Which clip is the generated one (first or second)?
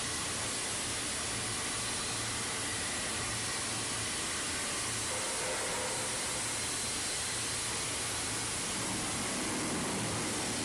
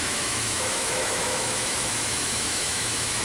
second